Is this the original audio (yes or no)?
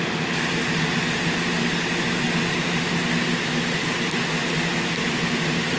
yes